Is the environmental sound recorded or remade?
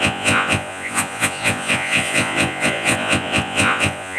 remade